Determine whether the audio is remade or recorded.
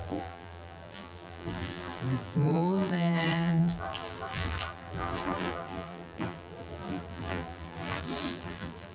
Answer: remade